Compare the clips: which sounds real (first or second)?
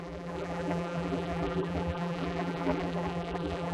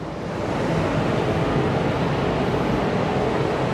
second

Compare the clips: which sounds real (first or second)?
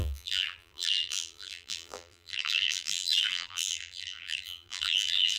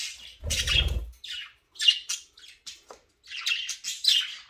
second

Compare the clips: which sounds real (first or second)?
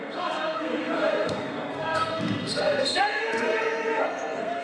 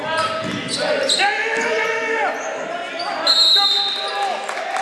second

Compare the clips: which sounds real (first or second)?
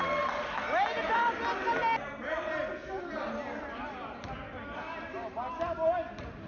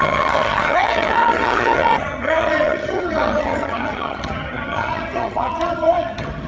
first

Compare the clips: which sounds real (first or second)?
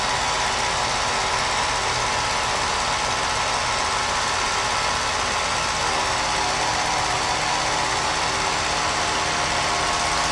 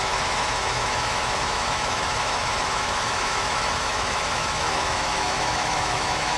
first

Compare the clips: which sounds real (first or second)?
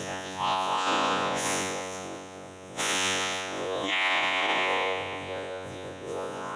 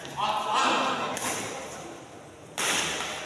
second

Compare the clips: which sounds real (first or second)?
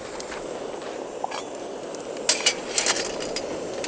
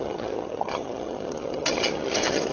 first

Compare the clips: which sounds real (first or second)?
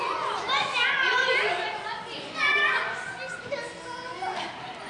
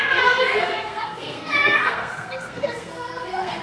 first